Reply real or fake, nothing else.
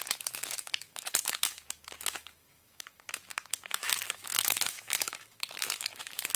fake